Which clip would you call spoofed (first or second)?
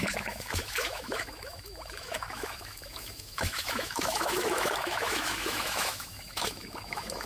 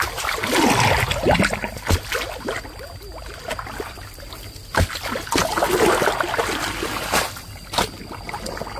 first